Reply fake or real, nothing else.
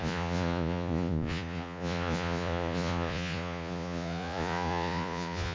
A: fake